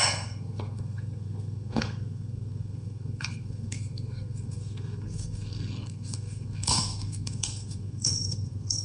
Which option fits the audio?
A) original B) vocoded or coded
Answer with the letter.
B